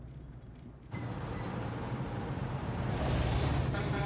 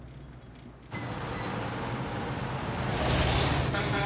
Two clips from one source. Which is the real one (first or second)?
second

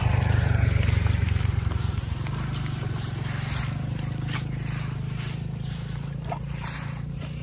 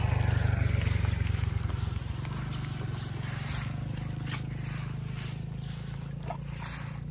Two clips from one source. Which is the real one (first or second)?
second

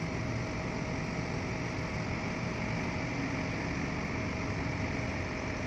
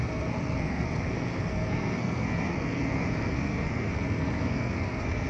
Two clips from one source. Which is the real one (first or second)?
first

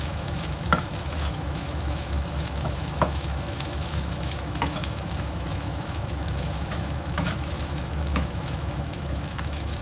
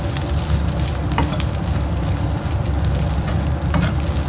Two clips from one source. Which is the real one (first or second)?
second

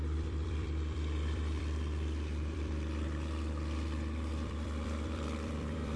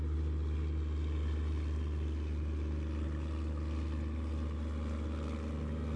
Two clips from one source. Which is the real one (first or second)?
second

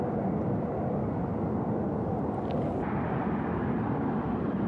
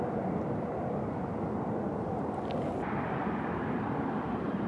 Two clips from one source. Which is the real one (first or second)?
first